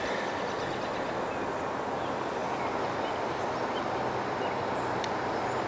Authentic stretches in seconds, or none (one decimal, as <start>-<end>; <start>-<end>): 0.0-5.7